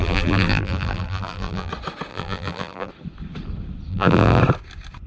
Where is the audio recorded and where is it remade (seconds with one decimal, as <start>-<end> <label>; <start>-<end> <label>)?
0.0-1.7 remade; 1.7-2.1 recorded; 2.1-2.9 remade; 2.9-3.9 recorded; 3.9-4.4 remade; 4.4-5.1 recorded